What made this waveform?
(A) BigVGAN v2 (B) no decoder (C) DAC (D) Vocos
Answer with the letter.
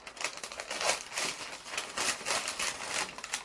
B